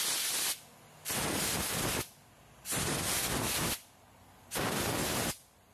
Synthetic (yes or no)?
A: no